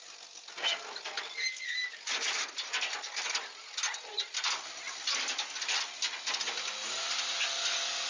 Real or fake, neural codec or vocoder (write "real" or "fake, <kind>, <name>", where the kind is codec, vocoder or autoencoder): real